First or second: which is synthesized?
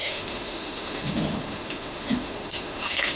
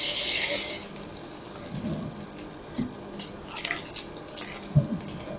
first